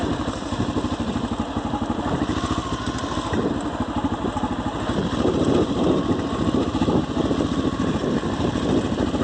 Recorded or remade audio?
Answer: recorded